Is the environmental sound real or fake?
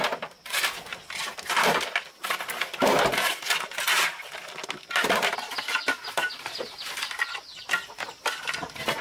real